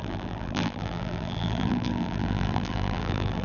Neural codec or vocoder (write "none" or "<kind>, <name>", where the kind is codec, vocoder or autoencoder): vocoder, BigVGAN v2